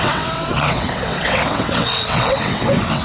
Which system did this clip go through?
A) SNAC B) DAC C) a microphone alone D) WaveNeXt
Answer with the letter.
D